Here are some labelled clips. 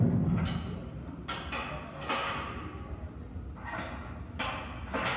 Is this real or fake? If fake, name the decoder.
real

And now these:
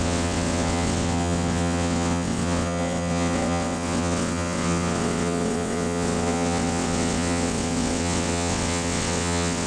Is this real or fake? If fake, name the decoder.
fake, vocoder, WaveNeXt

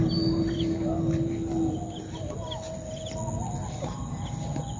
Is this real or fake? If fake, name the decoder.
real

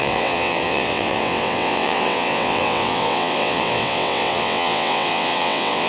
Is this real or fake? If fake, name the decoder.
fake, vocoder, WaveNeXt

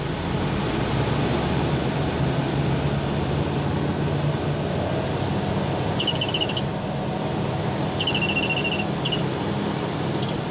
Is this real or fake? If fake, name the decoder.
real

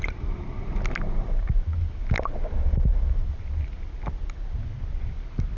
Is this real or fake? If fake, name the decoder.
real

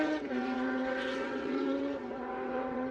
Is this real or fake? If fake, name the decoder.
fake, vocoder, WaveNeXt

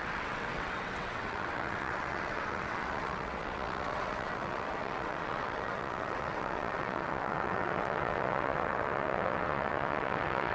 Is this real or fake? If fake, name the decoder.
fake, vocoder, WaveNeXt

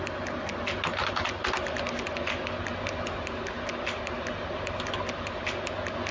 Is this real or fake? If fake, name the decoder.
real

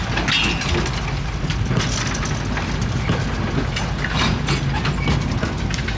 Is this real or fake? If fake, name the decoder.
real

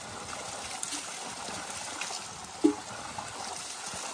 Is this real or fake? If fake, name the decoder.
real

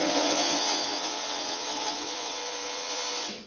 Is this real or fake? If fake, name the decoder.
fake, vocoder, WaveNeXt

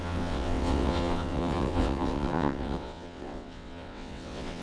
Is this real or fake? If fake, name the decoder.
fake, vocoder, WaveNeXt